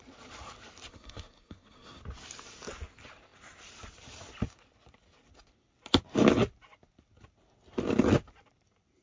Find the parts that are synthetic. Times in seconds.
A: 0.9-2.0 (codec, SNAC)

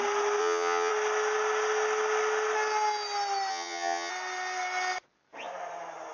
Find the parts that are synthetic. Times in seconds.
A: 0.4-0.9 (vocoder, HiFi-GAN); 3.5-4.1

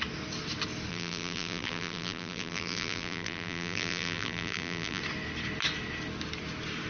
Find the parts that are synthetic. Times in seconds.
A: 0.9-5.0 (vocoder, BigVGAN v2)

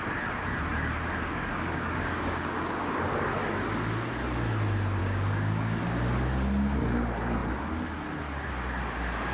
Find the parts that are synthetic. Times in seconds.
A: 1.2-2.8 (codec, DAC); 5.0-5.8

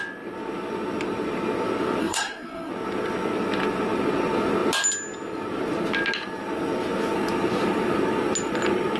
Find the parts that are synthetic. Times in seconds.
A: 2.0-2.7 (codec, SNAC)

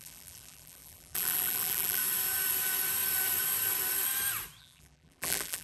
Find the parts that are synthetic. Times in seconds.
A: 0.0-2.0 (vocoder, BigVGAN v2); 4.6-5.6

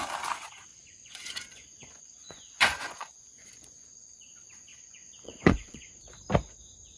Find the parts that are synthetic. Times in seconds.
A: 0.7-4.2 (vocoder, Vocos); 4.7-5.9